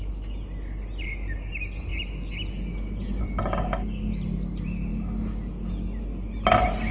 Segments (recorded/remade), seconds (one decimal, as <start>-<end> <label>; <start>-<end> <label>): 0.0-6.9 recorded